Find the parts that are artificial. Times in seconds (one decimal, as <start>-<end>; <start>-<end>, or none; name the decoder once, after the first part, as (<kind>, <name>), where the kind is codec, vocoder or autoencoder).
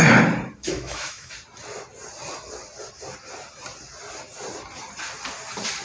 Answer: 0.6-1.3 (autoencoder, DAC-VAE)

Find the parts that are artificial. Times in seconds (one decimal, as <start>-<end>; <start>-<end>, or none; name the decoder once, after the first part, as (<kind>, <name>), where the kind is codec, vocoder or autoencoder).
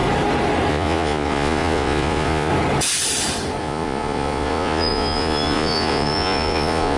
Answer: 0.7-2.5 (vocoder, Vocos); 3.6-7.0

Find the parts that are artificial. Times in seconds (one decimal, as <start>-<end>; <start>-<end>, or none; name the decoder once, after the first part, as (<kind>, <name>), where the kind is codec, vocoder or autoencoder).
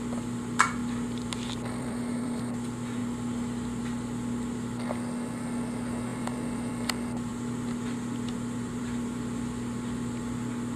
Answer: 0.8-2.4 (vocoder, BigVGAN v2); 6.1-6.7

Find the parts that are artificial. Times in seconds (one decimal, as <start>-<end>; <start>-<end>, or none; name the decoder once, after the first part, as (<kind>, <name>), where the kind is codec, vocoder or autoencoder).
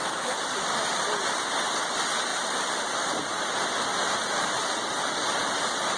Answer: none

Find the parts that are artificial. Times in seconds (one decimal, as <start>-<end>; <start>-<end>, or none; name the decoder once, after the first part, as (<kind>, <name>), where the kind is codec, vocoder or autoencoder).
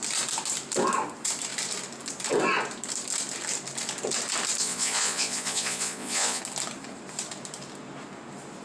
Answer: 4.6-6.4 (vocoder, Vocos)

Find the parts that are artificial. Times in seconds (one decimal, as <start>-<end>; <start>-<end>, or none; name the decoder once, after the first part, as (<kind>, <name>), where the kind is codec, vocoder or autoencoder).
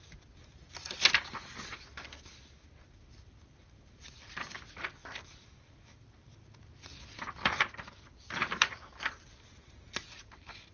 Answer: none